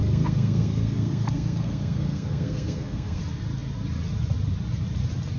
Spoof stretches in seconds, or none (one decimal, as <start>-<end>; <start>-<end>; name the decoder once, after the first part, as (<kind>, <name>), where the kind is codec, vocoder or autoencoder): 0.0-3.2 (codec, SNAC)